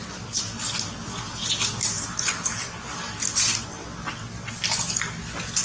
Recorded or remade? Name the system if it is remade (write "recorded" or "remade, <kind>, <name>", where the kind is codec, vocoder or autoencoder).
recorded